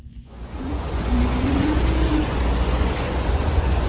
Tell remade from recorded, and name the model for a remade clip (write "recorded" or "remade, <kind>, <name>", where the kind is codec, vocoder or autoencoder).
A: remade, vocoder, Vocos